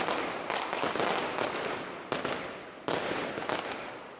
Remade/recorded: recorded